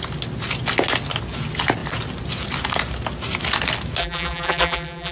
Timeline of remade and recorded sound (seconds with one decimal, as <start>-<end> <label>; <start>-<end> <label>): 0.0-4.0 recorded; 4.0-5.1 remade